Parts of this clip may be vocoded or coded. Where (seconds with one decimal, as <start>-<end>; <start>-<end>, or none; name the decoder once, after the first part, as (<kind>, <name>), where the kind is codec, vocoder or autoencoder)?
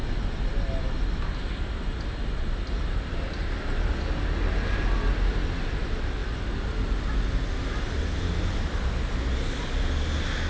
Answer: none